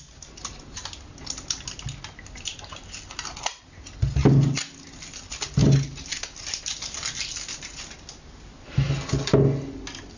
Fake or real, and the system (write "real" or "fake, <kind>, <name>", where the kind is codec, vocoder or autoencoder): real